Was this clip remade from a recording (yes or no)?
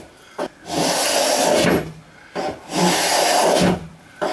no